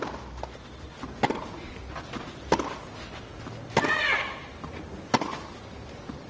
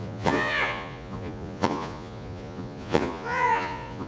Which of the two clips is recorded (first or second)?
first